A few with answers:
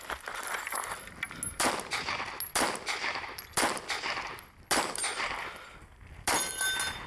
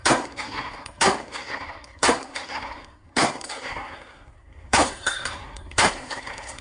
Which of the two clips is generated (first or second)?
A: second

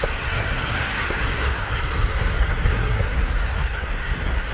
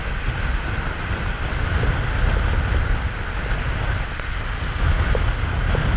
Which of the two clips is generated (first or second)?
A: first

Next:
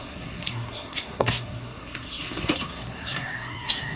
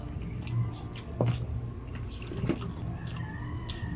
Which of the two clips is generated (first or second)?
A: first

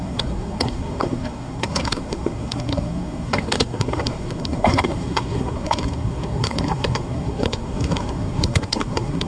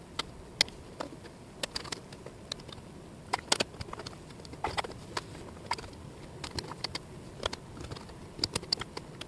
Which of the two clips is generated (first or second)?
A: first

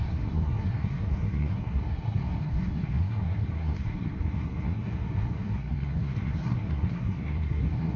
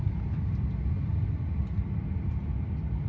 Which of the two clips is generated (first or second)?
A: first